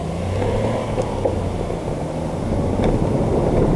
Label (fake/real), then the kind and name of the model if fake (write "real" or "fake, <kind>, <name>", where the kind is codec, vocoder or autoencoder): real